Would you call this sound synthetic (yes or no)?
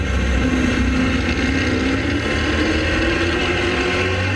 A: no